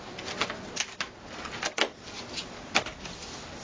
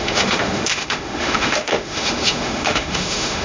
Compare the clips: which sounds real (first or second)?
first